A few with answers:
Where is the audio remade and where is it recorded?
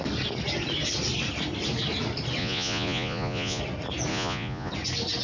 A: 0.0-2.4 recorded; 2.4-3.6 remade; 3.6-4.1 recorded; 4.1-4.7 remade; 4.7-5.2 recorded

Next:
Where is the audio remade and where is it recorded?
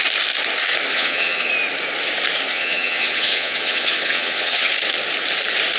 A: 0.0-0.9 recorded; 0.9-1.5 remade; 1.5-2.5 recorded; 2.5-4.7 remade; 4.7-5.8 recorded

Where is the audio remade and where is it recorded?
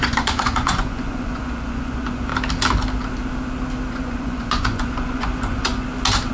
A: 0.0-2.3 remade; 2.3-3.9 recorded; 3.9-5.7 remade; 5.7-6.3 recorded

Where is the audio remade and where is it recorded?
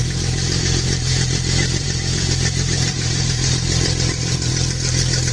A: 0.0-4.5 remade; 4.5-5.3 recorded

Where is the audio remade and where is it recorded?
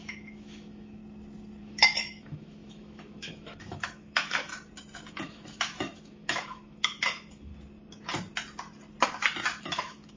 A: 0.0-1.0 remade; 1.0-1.6 recorded; 1.6-4.5 remade; 4.5-5.1 recorded; 5.1-7.5 remade; 7.5-9.6 recorded; 9.6-10.2 remade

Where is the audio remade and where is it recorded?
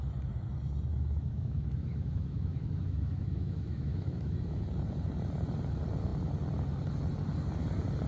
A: 0.0-0.9 recorded; 0.9-4.6 remade; 4.6-8.1 recorded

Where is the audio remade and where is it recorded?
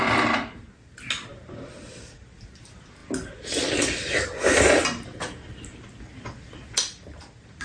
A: 0.0-7.6 recorded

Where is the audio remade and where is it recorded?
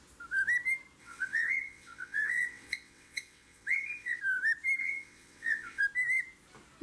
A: 0.0-1.0 recorded; 1.0-4.2 remade; 4.2-4.8 recorded; 4.8-5.8 remade; 5.8-6.8 recorded